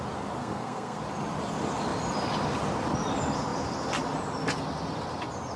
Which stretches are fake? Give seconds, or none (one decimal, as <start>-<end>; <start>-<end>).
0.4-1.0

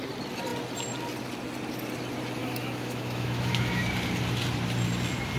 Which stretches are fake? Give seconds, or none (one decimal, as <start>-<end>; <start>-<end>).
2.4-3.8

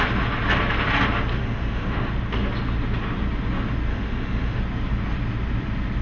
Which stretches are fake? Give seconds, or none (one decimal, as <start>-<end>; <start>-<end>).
1.3-2.1; 3.9-4.6